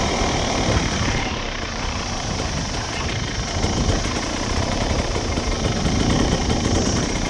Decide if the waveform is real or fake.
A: fake